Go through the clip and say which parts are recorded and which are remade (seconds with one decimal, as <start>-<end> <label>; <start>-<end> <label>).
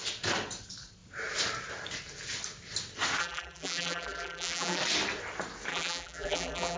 0.0-3.2 recorded; 3.2-4.8 remade; 4.8-5.7 recorded; 5.7-6.8 remade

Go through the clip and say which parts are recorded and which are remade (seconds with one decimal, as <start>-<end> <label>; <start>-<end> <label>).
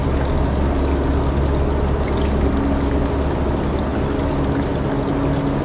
0.0-5.6 recorded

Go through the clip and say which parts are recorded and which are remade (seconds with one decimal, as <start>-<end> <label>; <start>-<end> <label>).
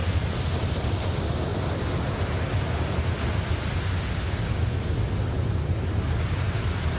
0.0-7.0 recorded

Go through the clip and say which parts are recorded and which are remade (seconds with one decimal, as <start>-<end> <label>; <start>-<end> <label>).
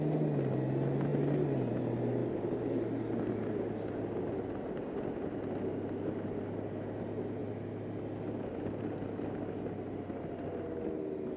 0.0-2.2 recorded; 2.2-3.0 remade; 3.0-11.4 recorded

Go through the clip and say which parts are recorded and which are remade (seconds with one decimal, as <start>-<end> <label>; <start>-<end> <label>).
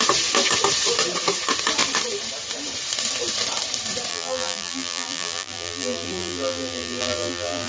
0.0-4.1 recorded; 4.1-7.7 remade